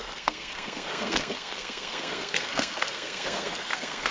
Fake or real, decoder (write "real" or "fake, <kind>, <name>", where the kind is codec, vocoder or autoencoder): fake, codec, SNAC